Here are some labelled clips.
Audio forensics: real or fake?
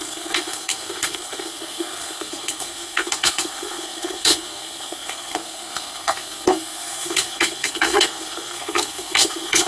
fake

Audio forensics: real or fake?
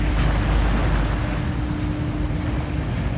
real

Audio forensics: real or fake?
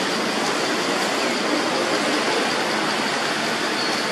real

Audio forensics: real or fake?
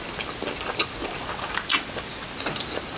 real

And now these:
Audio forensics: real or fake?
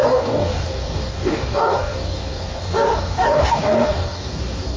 fake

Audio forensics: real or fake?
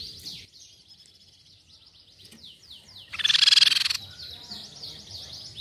real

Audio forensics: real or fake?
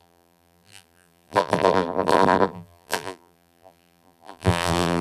fake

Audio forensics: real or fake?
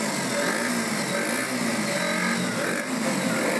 real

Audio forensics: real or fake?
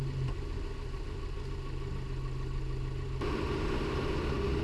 real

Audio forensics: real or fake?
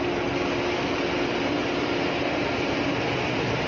real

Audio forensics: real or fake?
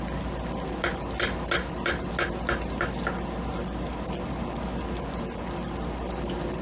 real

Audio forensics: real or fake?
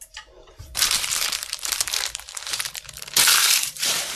fake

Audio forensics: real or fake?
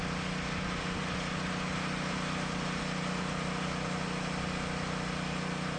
real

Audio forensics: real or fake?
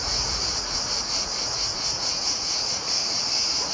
fake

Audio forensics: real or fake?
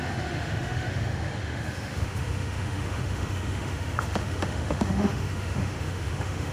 fake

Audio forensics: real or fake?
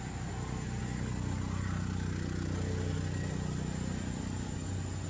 real